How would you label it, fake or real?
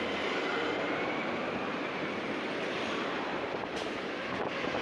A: fake